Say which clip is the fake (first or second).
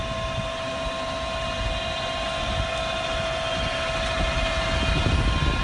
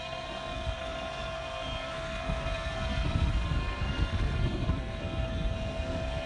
second